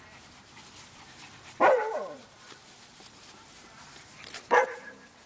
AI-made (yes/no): yes